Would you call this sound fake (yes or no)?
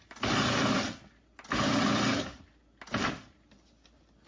no